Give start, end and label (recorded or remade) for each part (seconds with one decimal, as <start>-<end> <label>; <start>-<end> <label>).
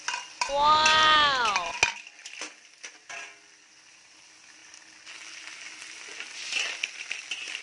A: 0.0-7.6 recorded